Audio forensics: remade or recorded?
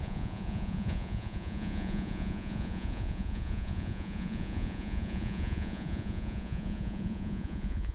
remade